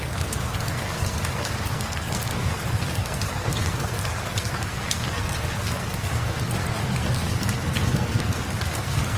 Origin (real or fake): fake